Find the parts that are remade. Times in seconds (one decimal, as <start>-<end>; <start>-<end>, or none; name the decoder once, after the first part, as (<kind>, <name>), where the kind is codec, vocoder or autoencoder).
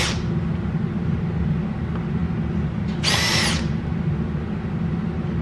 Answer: none